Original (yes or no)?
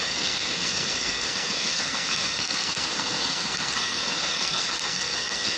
no